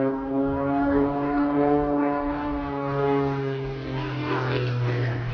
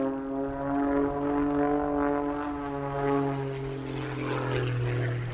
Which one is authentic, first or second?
second